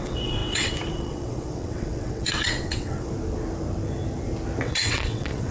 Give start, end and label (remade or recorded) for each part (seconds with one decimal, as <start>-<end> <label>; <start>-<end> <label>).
0.0-3.1 remade; 3.1-4.6 recorded; 4.6-5.5 remade

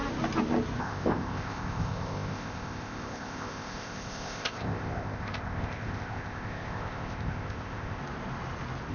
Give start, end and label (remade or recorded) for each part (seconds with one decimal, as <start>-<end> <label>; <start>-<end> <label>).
0.0-0.8 recorded; 0.8-8.0 remade; 8.0-8.9 recorded

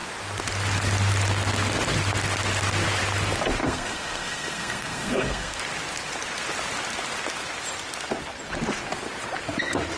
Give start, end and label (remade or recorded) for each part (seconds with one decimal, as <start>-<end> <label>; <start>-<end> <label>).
0.0-3.6 recorded; 3.6-5.6 remade; 5.6-10.0 recorded